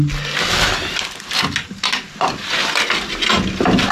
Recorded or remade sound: recorded